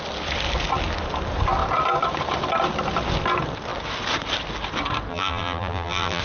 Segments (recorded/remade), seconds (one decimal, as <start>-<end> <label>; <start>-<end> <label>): 0.0-5.1 recorded; 5.1-6.2 remade